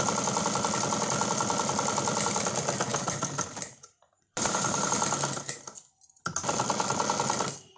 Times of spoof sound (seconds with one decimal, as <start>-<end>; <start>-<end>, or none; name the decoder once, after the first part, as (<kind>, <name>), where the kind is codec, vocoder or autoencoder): 2.9-4.9 (vocoder, BigVGAN v2)